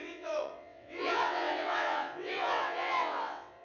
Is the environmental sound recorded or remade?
remade